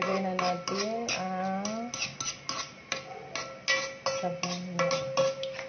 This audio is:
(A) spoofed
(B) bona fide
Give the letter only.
B